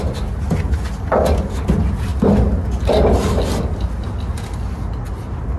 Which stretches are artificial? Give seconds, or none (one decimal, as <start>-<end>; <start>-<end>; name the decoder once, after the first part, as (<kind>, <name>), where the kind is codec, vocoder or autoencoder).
none